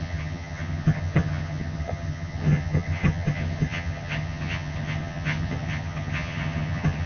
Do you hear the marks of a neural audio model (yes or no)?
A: yes